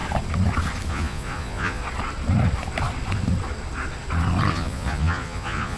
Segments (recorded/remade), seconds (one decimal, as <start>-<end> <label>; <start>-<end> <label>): 0.0-0.9 recorded; 0.9-1.8 remade; 1.8-4.5 recorded; 4.5-5.8 remade